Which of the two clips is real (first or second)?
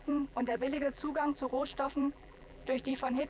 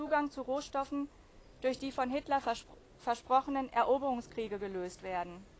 second